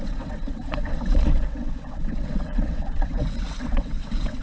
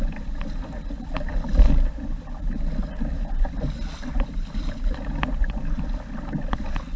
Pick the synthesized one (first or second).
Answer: first